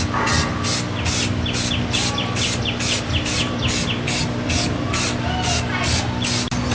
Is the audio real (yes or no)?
yes